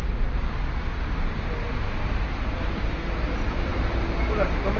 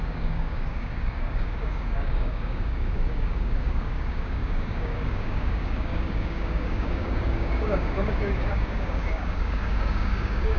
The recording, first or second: first